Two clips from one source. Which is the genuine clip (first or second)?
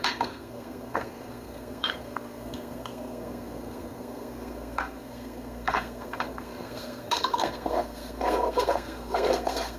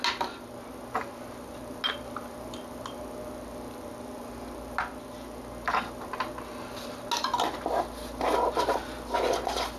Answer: second